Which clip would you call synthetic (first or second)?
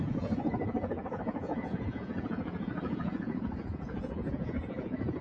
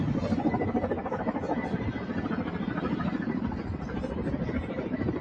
first